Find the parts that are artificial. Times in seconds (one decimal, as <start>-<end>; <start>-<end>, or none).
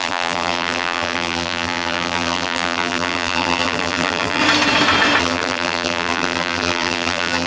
0.0-4.4; 5.2-7.5